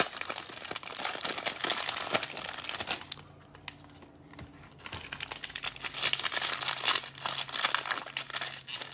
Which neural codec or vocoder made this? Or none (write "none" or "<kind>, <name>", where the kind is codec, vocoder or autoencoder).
none